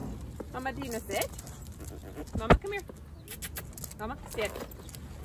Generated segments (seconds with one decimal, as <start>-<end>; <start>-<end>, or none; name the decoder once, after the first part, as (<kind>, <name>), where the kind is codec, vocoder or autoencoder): none